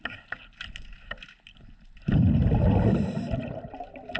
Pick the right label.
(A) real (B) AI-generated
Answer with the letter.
A